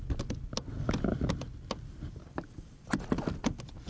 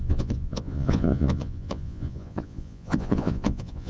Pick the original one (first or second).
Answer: first